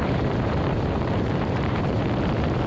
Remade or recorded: remade